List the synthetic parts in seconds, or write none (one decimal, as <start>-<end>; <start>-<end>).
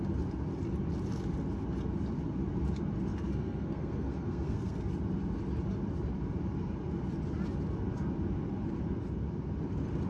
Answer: 3.1-4.9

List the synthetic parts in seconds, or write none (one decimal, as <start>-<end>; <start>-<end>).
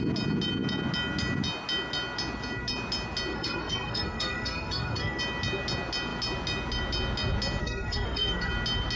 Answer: 3.3-5.2; 7.6-8.5